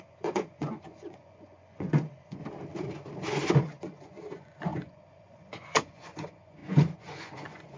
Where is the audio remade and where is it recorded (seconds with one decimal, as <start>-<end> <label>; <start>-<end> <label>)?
0.0-2.4 remade; 2.4-3.5 recorded; 3.5-7.8 remade